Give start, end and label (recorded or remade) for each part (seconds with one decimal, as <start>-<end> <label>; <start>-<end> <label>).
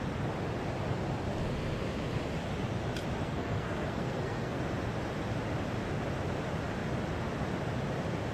0.0-3.2 recorded; 3.2-4.6 remade; 4.6-8.3 recorded